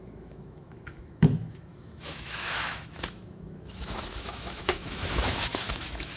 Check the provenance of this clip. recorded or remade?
remade